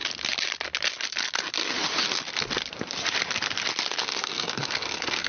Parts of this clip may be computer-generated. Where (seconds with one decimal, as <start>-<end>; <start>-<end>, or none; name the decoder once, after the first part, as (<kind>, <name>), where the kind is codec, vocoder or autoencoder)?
4.0-5.3 (codec, SNAC)